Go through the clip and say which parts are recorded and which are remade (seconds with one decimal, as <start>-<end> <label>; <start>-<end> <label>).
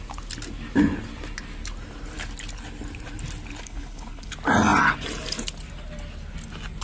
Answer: 0.0-3.6 recorded; 3.6-4.3 remade; 4.3-6.8 recorded